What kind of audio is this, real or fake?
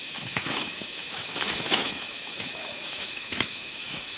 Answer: fake